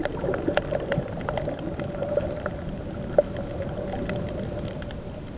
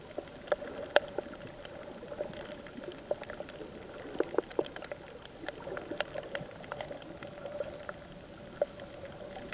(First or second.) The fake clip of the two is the first